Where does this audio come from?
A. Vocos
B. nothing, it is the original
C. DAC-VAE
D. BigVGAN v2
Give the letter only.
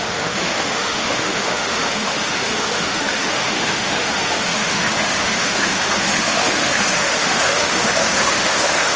C